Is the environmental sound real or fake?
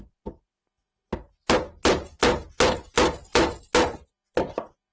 real